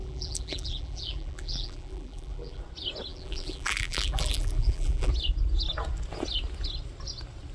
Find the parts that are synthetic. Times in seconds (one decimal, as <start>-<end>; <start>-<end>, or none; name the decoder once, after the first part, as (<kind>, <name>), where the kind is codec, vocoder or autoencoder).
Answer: 0.0-2.6 (vocoder, BigVGAN v2); 3.1-5.1